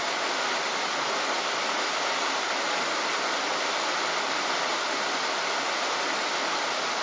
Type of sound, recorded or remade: recorded